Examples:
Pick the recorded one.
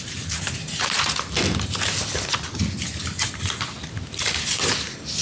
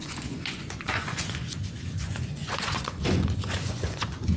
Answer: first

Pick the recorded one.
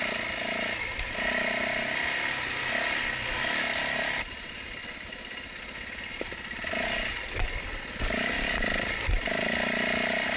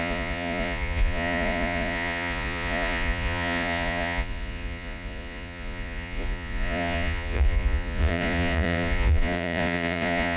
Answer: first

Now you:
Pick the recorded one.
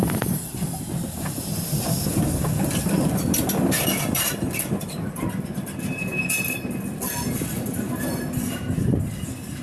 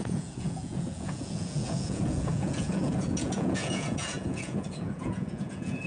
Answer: first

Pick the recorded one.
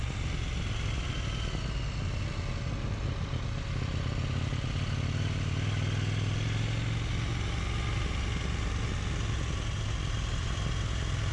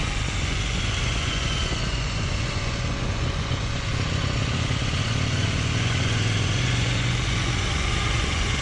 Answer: first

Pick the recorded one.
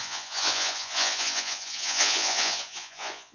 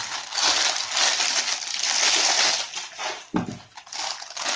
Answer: second